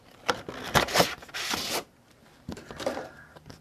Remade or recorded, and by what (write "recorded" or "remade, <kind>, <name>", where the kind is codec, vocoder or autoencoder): remade, vocoder, BigVGAN v2